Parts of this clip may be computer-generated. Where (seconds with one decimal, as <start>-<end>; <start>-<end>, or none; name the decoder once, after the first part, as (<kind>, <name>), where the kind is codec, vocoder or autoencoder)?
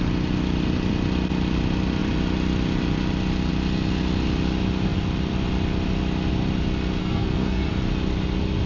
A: 7.0-7.7 (codec, SNAC)